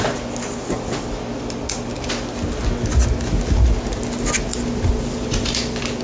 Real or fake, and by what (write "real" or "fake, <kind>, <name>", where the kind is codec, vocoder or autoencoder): real